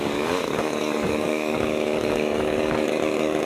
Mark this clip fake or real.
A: fake